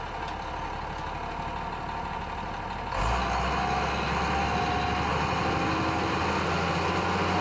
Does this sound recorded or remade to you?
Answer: recorded